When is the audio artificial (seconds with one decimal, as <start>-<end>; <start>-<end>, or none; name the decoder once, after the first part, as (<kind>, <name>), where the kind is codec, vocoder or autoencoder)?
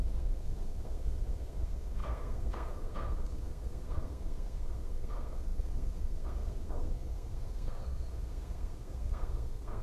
0.0-9.8 (codec, SNAC)